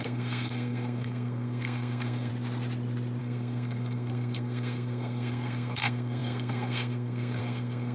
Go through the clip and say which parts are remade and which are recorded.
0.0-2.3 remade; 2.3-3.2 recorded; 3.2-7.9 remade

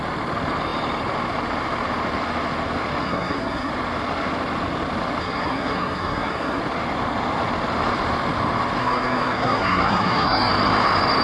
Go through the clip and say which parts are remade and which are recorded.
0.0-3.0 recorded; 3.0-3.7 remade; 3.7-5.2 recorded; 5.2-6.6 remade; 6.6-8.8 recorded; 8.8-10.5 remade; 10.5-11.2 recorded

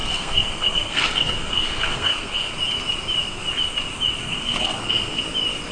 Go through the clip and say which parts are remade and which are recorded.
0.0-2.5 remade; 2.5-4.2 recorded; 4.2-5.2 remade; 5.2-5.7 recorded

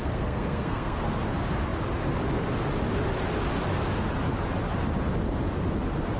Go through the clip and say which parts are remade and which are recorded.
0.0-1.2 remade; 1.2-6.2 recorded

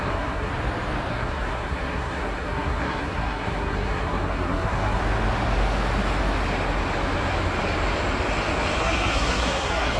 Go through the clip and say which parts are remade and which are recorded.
0.0-0.5 remade; 0.5-1.1 recorded; 1.1-5.0 remade; 5.0-8.8 recorded; 8.8-10.0 remade

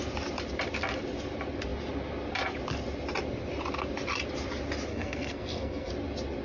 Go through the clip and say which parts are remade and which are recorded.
0.0-4.9 recorded; 4.9-5.9 remade; 5.9-6.4 recorded

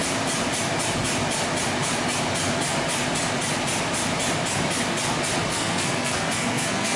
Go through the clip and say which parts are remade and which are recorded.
0.0-5.5 recorded; 5.5-7.0 remade

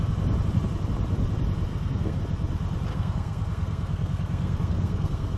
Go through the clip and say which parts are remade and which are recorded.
0.0-1.7 recorded; 1.7-2.2 remade; 2.2-2.9 recorded; 2.9-5.4 remade